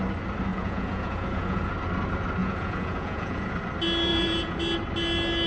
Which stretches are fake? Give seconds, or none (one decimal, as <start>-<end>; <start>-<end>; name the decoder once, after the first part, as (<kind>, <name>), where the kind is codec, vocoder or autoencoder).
0.5-1.7 (vocoder, Vocos); 2.4-3.5; 4.1-4.6